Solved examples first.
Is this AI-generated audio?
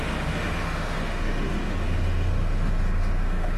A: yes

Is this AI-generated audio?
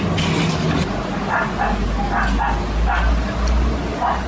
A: no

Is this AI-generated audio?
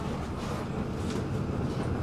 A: no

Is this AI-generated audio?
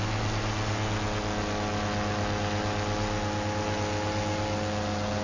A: no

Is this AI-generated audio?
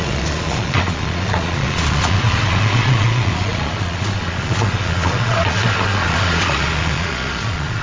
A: yes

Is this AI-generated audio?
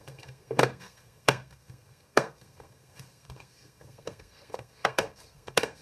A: yes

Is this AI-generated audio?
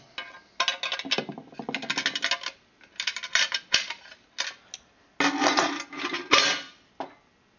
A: no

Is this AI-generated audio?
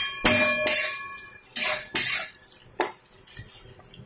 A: no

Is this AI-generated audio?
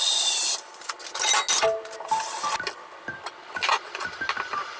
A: no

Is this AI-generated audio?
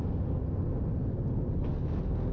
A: no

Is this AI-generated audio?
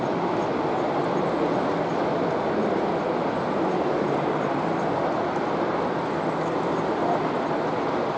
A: no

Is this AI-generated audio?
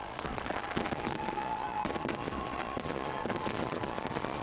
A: yes